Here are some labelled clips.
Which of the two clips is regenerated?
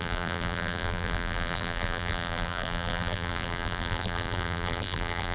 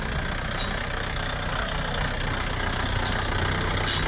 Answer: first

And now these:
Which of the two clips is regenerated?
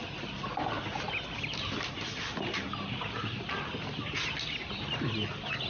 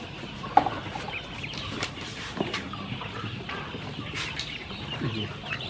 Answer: second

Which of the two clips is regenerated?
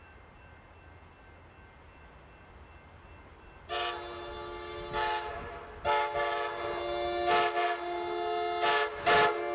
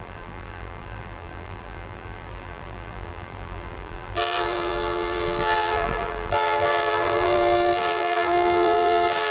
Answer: second